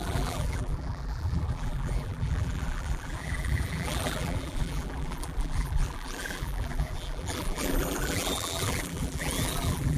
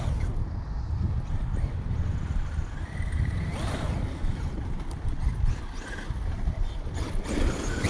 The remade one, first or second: first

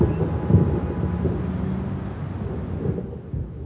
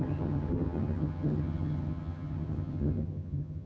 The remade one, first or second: second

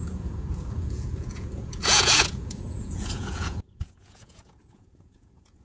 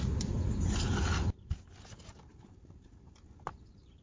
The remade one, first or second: first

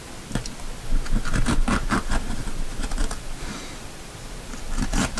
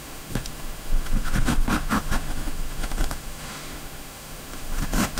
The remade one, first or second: second